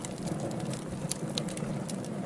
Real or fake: real